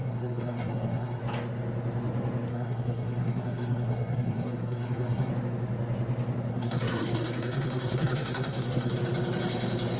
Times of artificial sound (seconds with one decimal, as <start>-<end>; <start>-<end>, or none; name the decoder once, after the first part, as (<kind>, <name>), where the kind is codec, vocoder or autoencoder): 0.0-1.2 (codec, SNAC); 2.5-5.3; 6.5-8.9

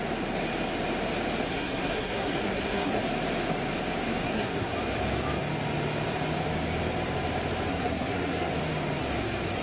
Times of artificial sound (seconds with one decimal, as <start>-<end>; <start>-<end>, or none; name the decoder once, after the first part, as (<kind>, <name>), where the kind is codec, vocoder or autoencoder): 1.5-3.0 (codec, SNAC); 4.2-4.7; 7.7-8.5

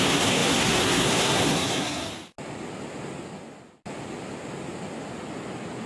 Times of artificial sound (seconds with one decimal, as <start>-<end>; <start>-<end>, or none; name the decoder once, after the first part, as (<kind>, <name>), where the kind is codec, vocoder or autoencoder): 0.0-2.1 (codec, SNAC)

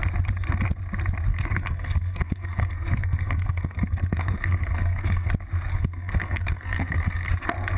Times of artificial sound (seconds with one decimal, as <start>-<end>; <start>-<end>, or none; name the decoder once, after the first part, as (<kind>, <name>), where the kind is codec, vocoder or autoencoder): 1.3-5.3 (codec, SNAC); 5.7-7.3

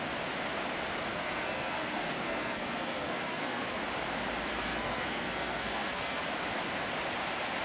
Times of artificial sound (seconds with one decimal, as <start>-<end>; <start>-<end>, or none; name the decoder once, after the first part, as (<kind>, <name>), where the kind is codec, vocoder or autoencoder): 1.1-3.8 (codec, SNAC); 4.5-6.2

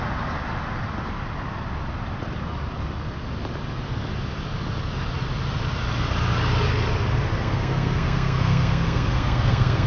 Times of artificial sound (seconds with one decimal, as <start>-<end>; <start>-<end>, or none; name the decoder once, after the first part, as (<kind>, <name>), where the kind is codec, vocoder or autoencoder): 7.4-9.9 (codec, SNAC)

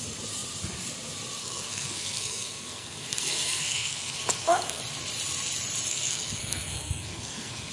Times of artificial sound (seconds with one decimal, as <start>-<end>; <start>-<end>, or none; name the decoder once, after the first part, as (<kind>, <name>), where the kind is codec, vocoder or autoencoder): 1.4-4.8 (codec, SNAC); 5.9-7.7